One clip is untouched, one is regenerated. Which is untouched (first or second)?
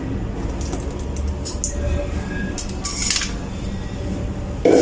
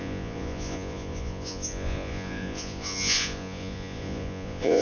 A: first